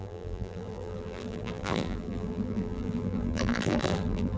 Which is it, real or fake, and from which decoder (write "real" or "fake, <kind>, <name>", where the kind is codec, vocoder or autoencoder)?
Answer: fake, vocoder, BigVGAN v2